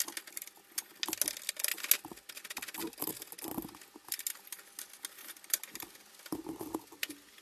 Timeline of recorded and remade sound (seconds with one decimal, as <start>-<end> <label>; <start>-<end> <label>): 0.0-7.4 recorded